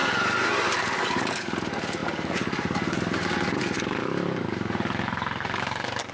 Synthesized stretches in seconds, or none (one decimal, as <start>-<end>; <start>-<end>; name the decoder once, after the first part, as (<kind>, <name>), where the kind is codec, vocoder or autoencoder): 0.8-6.1 (codec, DAC)